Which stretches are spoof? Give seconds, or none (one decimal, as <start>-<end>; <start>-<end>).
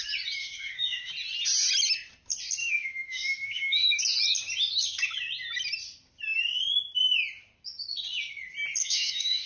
0.4-1.1; 2.6-4.0; 8.8-9.5